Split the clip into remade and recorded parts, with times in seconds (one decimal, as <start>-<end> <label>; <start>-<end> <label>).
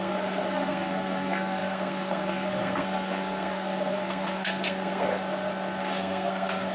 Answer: 0.0-5.1 remade; 5.1-5.8 recorded; 5.8-6.7 remade